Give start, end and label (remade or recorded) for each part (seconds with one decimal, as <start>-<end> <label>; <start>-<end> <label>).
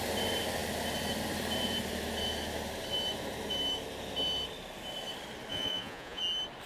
0.0-5.5 recorded; 5.5-6.2 remade; 6.2-6.7 recorded